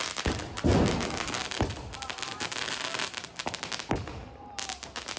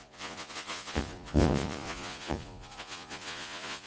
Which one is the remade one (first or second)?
second